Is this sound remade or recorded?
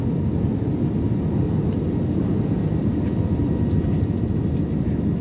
recorded